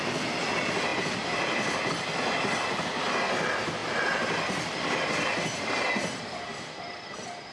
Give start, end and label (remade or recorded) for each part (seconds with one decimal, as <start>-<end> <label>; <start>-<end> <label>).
0.0-0.9 recorded; 0.9-1.9 remade; 1.9-3.8 recorded; 3.8-5.7 remade; 5.7-6.5 recorded; 6.5-7.5 remade